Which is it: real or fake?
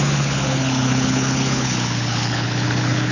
fake